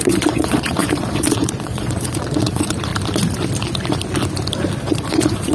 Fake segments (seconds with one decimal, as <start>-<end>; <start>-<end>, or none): 0.0-2.9; 4.8-5.5